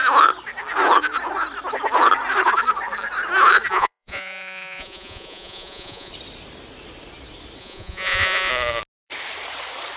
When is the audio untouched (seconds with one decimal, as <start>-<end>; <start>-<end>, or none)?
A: 0.0-3.7; 6.1-7.6; 8.5-10.0